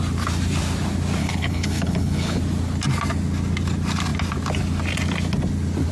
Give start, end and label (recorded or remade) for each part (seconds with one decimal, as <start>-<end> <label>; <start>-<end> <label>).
0.0-1.2 recorded; 1.2-2.4 remade; 2.4-5.9 recorded